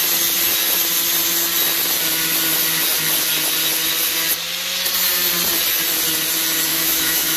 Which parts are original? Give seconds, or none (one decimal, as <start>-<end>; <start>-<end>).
0.0-6.7